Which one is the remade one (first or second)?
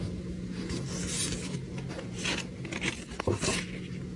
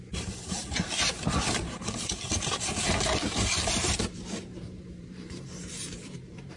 second